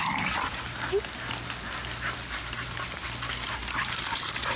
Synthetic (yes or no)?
no